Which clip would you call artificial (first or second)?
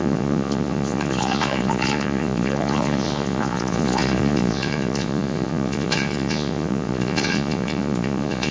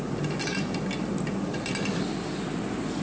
first